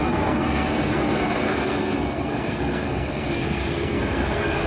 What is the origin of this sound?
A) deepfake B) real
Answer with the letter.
A